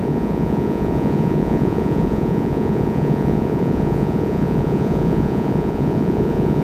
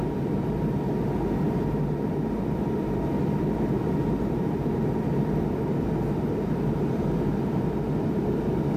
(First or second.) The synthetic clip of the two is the first